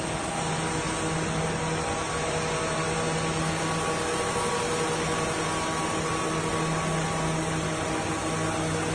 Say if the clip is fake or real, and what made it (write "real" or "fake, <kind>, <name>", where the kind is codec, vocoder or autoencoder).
real